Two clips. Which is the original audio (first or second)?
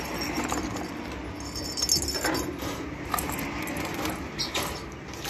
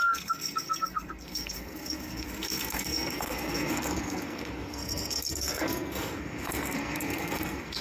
first